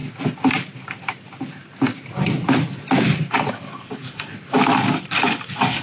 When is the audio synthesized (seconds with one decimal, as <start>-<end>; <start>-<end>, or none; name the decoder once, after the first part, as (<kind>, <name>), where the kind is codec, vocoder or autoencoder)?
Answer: 3.5-4.3 (codec, DAC); 5.0-5.8